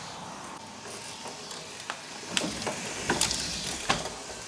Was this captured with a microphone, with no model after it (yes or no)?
no